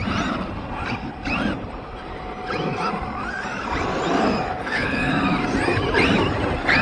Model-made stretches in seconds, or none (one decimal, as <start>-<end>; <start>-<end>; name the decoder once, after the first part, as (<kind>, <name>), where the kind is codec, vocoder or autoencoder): 4.6-5.1 (codec, HILCodec)